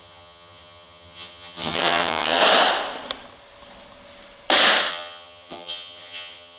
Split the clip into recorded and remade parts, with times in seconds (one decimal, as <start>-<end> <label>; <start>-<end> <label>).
0.0-2.4 remade; 2.4-4.9 recorded; 4.9-6.6 remade